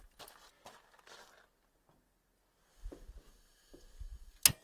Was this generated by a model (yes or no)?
no